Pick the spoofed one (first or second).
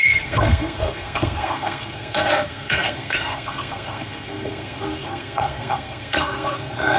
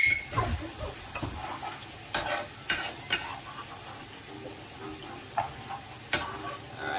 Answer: first